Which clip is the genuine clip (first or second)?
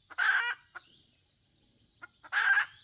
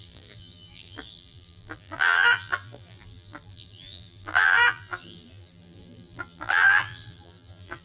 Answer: first